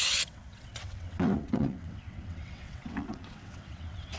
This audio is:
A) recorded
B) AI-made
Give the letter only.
B